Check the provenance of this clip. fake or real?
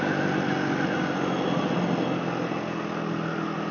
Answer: real